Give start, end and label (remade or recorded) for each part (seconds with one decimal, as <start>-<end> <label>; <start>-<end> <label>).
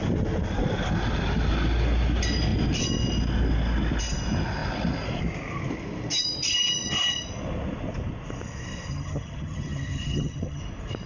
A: 0.0-8.9 recorded; 8.9-10.6 remade; 10.6-11.1 recorded